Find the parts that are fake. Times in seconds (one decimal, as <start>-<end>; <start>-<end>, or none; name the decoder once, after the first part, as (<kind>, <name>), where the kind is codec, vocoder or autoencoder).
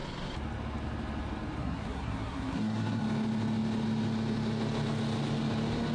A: 1.6-3.0 (codec, SNAC)